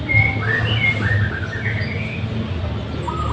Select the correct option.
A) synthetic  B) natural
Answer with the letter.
B